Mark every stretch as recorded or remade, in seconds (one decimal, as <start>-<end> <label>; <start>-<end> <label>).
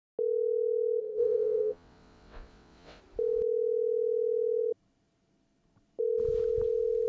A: 0.0-1.0 recorded; 1.0-3.0 remade; 3.0-7.1 recorded